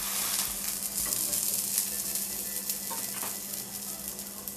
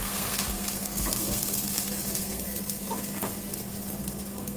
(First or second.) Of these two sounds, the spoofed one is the second